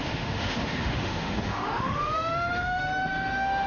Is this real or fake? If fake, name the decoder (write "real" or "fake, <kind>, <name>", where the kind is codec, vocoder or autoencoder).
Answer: fake, autoencoder, DAC-VAE